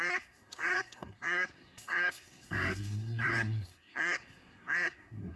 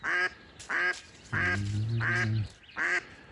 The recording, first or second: second